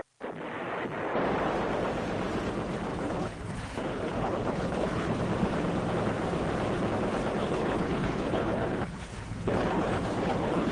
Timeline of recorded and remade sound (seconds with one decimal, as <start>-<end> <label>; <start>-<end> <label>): 0.0-2.9 recorded; 2.9-5.2 remade; 5.2-7.4 recorded; 7.4-10.7 remade